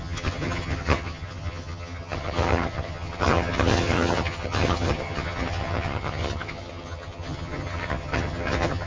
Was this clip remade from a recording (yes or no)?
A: yes